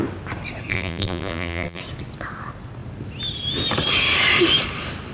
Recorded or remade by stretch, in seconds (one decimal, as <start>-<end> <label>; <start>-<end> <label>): 0.0-0.7 recorded; 0.7-1.8 remade; 1.8-5.1 recorded